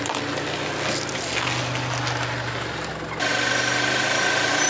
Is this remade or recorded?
recorded